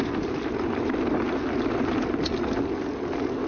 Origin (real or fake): real